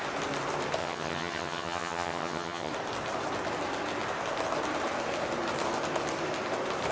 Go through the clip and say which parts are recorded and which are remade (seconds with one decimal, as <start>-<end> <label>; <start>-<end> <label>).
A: 0.0-0.8 recorded; 0.8-2.7 remade; 2.7-6.9 recorded

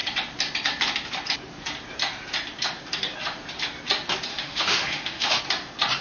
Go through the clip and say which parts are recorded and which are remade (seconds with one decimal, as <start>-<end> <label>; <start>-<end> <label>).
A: 0.0-4.3 recorded; 4.3-5.4 remade; 5.4-6.0 recorded

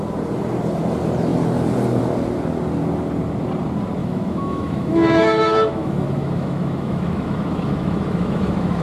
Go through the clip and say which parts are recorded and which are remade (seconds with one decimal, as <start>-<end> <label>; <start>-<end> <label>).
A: 0.0-4.0 recorded; 4.0-8.8 remade

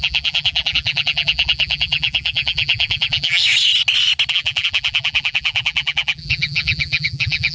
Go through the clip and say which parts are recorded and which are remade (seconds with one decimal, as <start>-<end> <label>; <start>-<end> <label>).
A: 0.0-3.4 remade; 3.4-4.3 recorded; 4.3-7.5 remade

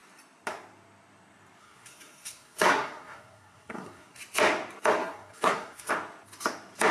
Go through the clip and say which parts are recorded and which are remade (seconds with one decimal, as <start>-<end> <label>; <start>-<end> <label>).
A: 0.0-1.6 recorded; 1.6-4.2 remade; 4.2-5.0 recorded; 5.0-5.9 remade; 5.9-6.9 recorded

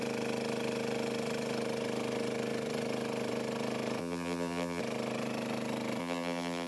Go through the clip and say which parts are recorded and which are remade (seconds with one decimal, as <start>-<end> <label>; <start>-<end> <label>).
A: 0.0-4.0 recorded; 4.0-4.8 remade; 4.8-6.0 recorded; 6.0-6.7 remade

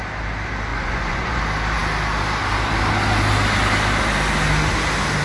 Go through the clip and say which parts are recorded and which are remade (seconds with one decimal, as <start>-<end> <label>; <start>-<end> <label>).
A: 0.0-0.7 recorded; 0.7-1.4 remade; 1.4-5.2 recorded